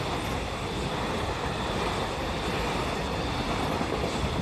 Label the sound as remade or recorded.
recorded